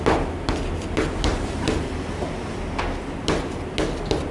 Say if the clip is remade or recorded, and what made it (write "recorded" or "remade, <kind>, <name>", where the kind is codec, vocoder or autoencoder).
recorded